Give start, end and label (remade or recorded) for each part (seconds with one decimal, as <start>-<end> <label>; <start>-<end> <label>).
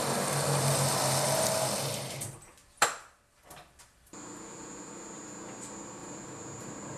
0.0-2.6 recorded; 2.6-4.9 remade; 4.9-7.0 recorded